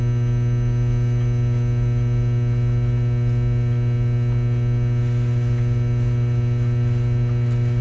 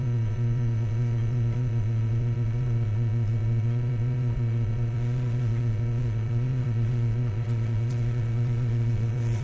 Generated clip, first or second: second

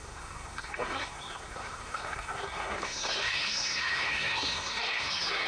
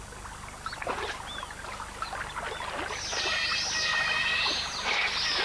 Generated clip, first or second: first